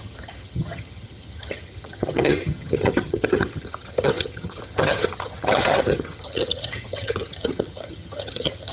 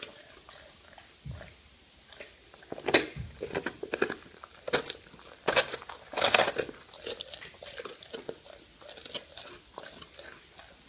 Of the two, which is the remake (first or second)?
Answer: first